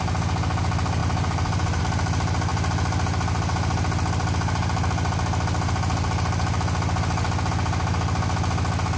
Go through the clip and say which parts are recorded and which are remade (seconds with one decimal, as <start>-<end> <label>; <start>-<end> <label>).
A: 0.0-1.0 recorded; 1.0-1.8 remade; 1.8-9.0 recorded

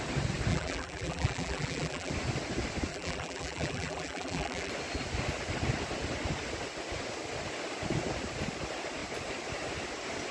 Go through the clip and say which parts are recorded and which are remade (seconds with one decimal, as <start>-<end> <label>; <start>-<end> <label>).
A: 0.0-0.5 recorded; 0.5-2.1 remade; 2.1-2.9 recorded; 2.9-4.7 remade; 4.7-10.3 recorded

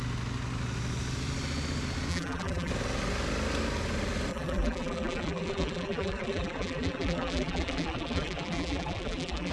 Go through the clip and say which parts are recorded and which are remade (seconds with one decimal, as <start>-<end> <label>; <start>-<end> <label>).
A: 0.0-2.1 recorded; 2.1-2.7 remade; 2.7-4.3 recorded; 4.3-9.5 remade

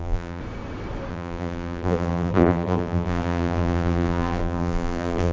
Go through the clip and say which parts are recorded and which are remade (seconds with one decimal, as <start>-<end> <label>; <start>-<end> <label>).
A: 0.0-0.4 remade; 0.4-1.1 recorded; 1.1-5.3 remade

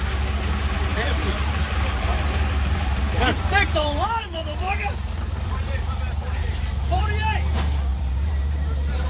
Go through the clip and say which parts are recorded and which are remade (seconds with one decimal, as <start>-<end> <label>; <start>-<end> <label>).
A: 0.0-0.9 recorded; 0.9-5.6 remade; 5.6-6.4 recorded; 6.4-7.0 remade; 7.0-7.9 recorded; 7.9-9.1 remade

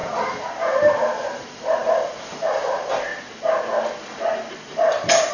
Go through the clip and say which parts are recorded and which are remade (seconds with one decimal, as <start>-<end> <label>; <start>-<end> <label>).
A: 0.0-0.6 recorded; 0.6-3.1 remade; 3.1-4.5 recorded; 4.5-5.3 remade

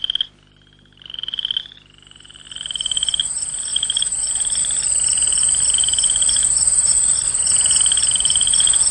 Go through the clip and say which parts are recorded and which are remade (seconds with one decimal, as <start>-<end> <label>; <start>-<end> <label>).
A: 0.0-3.7 recorded; 3.7-4.6 remade; 4.6-5.8 recorded; 5.8-7.8 remade; 7.8-8.9 recorded